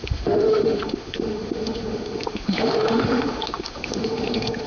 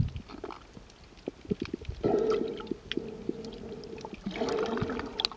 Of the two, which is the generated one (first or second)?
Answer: first